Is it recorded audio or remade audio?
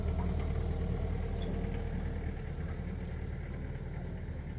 recorded